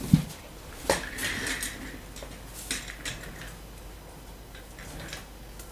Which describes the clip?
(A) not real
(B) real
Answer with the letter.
B